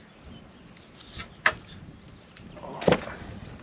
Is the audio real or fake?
real